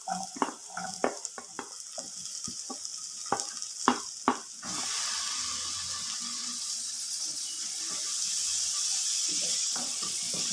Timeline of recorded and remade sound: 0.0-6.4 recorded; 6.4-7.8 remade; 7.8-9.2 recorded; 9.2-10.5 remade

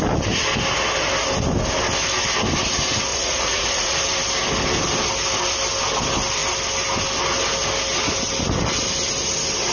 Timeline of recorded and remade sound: 0.0-3.1 recorded; 3.1-4.0 remade; 4.0-9.7 recorded

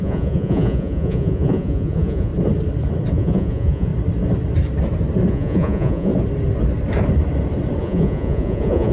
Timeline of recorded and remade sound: 0.0-2.3 remade; 2.3-3.1 recorded; 3.1-3.9 remade; 3.9-5.3 recorded; 5.3-6.1 remade; 6.1-7.8 recorded; 7.8-8.9 remade

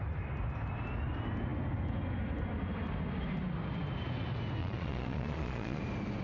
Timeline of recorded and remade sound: 0.0-4.6 recorded; 4.6-5.8 remade; 5.8-6.2 recorded